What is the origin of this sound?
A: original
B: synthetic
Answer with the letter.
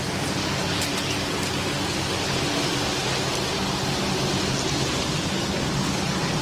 A